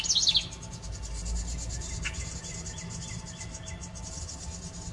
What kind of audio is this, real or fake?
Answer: real